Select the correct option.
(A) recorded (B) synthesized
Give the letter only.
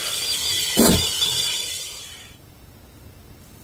A